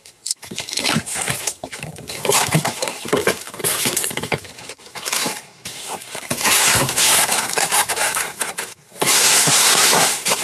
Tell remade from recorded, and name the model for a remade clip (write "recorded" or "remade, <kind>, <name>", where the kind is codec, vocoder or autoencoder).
remade, codec, SNAC